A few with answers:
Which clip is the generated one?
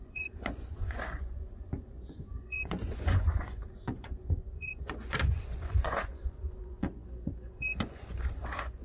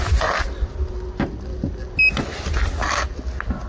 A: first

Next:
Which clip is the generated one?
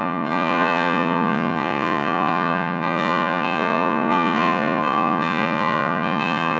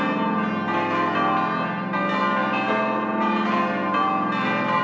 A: first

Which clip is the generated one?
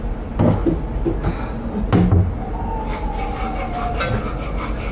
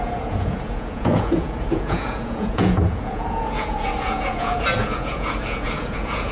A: second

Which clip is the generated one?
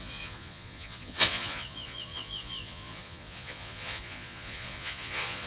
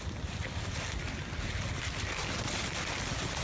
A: first